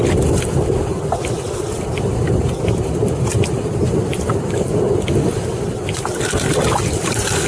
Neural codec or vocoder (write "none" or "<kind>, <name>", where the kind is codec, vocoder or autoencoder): none